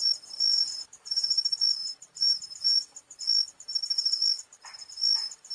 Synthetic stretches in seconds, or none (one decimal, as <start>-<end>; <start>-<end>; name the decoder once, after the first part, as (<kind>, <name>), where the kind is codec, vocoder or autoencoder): 0.6-1.3 (vocoder, BigVGAN v2); 1.8-3.2

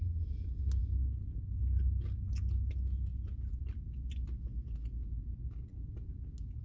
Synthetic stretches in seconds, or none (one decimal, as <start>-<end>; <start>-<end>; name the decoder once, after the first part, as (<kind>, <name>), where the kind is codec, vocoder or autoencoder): none